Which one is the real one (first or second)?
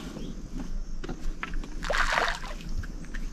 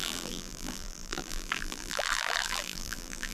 first